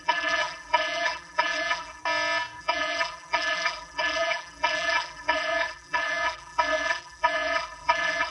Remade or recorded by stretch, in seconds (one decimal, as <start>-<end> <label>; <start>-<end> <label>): 0.0-2.0 remade; 2.0-2.6 recorded; 2.6-8.3 remade